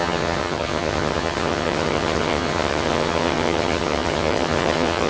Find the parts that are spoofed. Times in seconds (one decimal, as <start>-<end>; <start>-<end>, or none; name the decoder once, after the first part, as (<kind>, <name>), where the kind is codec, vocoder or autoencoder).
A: 0.0-5.1 (vocoder, HiFi-GAN)